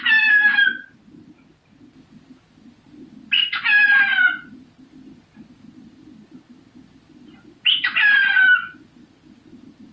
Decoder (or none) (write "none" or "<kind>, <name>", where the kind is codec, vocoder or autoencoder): none